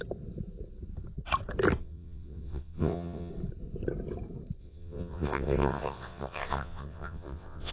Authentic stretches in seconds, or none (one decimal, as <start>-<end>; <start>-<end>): 0.0-1.8; 3.3-4.6